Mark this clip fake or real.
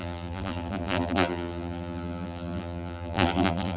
fake